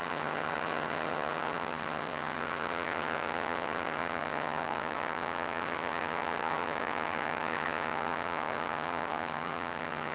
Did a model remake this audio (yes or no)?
yes